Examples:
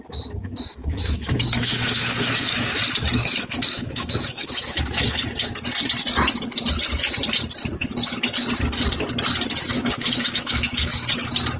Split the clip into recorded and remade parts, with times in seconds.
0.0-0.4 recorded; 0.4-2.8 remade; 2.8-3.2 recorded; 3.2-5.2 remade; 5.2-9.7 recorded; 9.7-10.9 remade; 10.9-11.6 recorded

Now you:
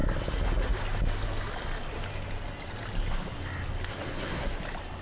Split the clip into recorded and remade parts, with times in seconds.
0.0-3.9 recorded; 3.9-4.5 remade; 4.5-5.0 recorded

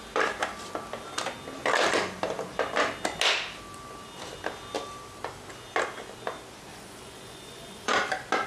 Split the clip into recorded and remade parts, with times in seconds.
0.0-6.7 recorded; 6.7-7.9 remade; 7.9-8.5 recorded

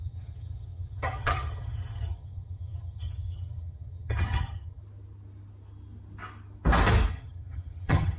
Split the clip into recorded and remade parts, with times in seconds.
0.0-4.8 remade; 4.8-7.1 recorded; 7.1-8.2 remade

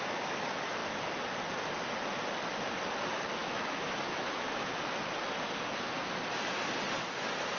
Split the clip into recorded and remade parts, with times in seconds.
0.0-3.4 recorded; 3.4-4.8 remade; 4.8-7.6 recorded

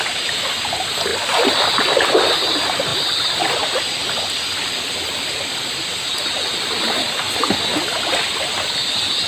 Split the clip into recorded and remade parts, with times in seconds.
0.0-9.3 recorded

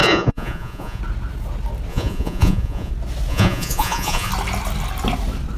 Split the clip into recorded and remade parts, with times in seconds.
0.0-1.0 remade; 1.0-1.9 recorded; 1.9-2.9 remade; 2.9-3.3 recorded; 3.3-4.3 remade; 4.3-5.6 recorded